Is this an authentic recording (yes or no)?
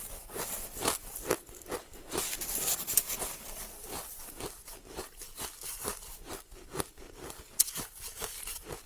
no